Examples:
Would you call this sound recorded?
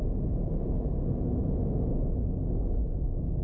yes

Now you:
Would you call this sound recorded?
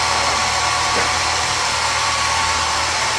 no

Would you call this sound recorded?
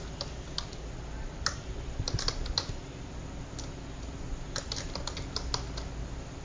yes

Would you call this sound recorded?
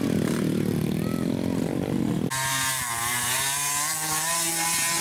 yes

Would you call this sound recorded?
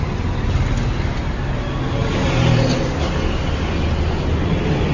yes